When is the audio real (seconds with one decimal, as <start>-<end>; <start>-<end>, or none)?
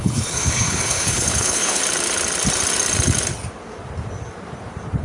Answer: 1.8-5.0